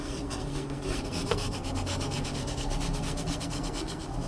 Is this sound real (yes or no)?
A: no